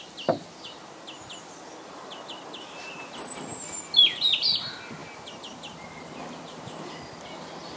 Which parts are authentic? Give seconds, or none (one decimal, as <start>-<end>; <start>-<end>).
0.0-7.8